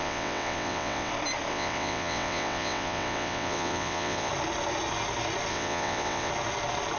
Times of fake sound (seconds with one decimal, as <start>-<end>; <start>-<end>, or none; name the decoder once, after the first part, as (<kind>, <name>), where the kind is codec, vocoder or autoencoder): 0.0-1.1 (vocoder, WaveNeXt); 1.5-4.3; 5.5-6.3